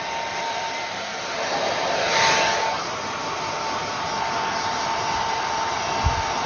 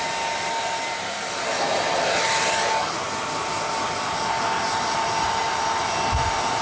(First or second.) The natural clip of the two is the second